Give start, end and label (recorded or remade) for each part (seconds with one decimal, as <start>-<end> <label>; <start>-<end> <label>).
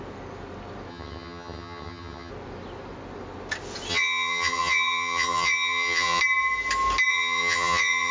0.0-0.9 recorded; 0.9-2.3 remade; 2.3-3.9 recorded; 3.9-6.2 remade; 6.2-7.1 recorded; 7.1-8.1 remade